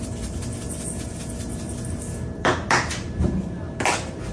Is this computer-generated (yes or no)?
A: no